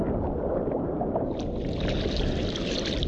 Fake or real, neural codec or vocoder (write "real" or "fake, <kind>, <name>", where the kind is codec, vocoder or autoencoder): real